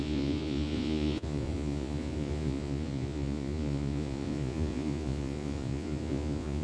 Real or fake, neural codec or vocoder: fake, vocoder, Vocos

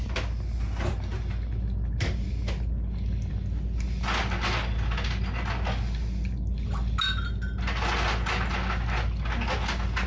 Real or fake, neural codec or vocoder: real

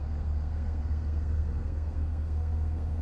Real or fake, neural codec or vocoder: fake, codec, SNAC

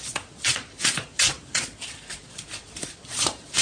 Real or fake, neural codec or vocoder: fake, vocoder, Vocos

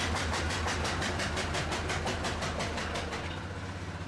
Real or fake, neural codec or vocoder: fake, vocoder, BigVGAN v2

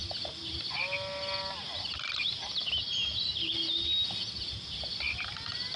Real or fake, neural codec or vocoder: real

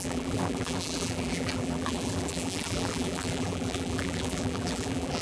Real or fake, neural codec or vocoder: fake, vocoder, BigVGAN v2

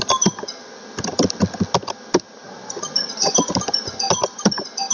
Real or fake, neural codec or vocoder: real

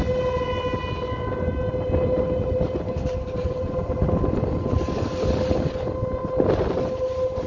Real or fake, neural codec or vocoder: real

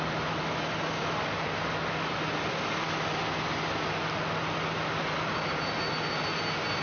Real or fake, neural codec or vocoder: real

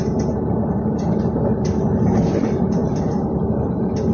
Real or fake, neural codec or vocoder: fake, vocoder, BigVGAN v2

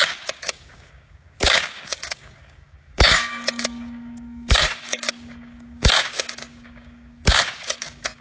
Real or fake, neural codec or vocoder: fake, codec, DAC